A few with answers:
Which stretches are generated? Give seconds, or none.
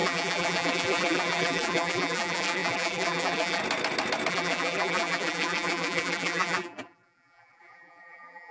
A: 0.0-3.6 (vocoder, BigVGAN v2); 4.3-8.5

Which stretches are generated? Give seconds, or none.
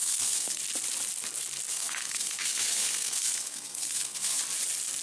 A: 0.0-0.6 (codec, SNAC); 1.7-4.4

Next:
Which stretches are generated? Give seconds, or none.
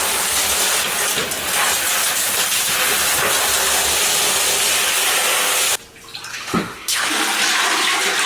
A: 6.3-7.1 (autoencoder, DAC-VAE)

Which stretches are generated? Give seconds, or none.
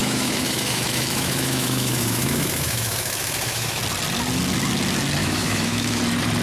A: 0.0-3.8 (autoencoder, DAC-VAE); 5.2-6.0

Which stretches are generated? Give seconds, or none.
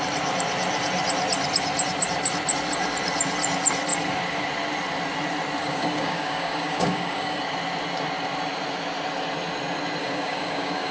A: 5.6-7.4 (codec, DAC); 10.0-10.9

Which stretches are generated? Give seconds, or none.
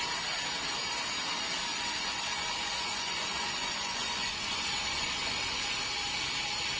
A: 1.7-5.8 (vocoder, Vocos)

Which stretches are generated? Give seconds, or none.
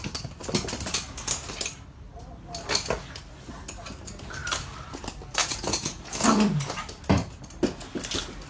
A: 5.4-6.2 (vocoder, Vocos)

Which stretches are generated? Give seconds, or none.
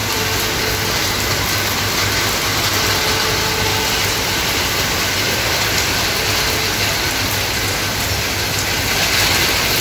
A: 0.0-0.6 (vocoder, BigVGAN v2); 3.7-5.6